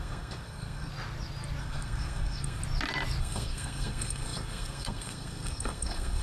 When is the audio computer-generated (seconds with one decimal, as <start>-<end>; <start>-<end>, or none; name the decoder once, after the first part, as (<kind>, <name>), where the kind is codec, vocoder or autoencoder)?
0.0-0.9 (codec, SNAC); 1.6-2.6; 3.2-6.2